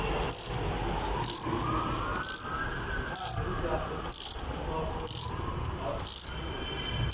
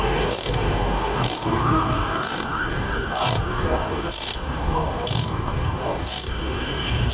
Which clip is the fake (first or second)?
second